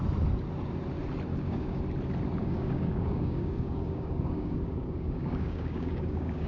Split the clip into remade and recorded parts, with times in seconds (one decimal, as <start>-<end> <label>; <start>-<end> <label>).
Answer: 0.0-1.3 recorded; 1.3-1.8 remade; 1.8-2.4 recorded; 2.4-6.5 remade